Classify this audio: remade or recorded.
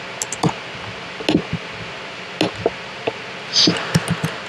recorded